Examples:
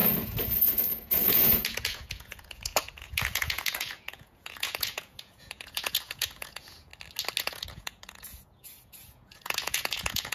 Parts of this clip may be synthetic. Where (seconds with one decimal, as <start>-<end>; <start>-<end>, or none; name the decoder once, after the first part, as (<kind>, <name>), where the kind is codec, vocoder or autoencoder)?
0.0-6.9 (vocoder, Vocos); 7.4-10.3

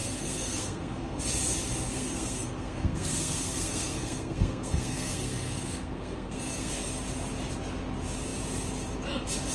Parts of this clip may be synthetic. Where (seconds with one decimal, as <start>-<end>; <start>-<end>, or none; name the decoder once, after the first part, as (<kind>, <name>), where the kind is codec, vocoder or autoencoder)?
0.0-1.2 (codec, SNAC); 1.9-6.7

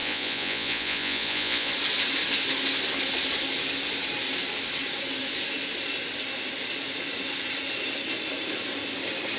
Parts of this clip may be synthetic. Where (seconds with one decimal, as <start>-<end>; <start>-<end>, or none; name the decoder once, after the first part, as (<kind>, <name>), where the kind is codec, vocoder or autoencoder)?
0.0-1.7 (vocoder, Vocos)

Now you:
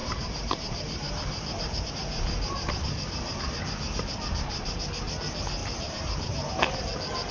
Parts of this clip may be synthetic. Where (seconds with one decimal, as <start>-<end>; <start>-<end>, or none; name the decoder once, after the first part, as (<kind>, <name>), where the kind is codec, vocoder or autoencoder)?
0.0-1.9 (vocoder, BigVGAN v2); 5.6-6.5

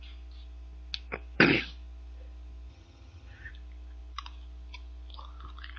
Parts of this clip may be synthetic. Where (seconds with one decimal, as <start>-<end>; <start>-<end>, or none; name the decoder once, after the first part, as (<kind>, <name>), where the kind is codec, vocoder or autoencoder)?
2.7-3.5 (vocoder, HiFi-GAN)